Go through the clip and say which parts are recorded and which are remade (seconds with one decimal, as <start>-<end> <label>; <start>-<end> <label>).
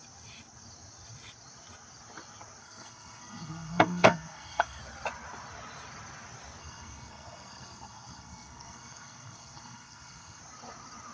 0.0-2.6 recorded; 2.6-4.8 remade; 4.8-6.6 recorded; 6.6-10.4 remade; 10.4-11.1 recorded